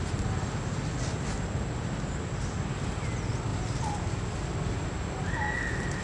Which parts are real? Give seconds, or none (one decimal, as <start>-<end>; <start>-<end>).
0.0-6.0